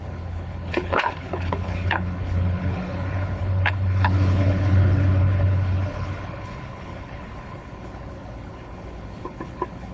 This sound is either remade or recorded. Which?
remade